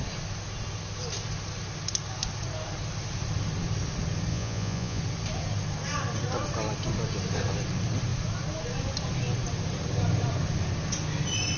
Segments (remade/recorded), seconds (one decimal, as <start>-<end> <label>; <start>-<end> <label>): 0.0-4.3 recorded; 4.3-5.0 remade; 5.0-11.6 recorded